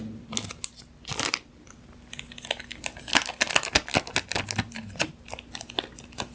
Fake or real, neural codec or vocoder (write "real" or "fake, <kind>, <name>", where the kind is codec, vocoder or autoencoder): real